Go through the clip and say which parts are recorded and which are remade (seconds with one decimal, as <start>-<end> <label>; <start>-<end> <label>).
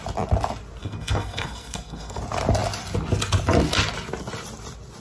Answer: 0.0-0.8 recorded; 0.8-2.2 remade; 2.2-5.0 recorded